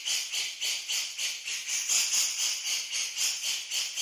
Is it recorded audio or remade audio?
recorded